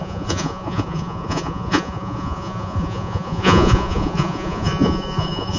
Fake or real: fake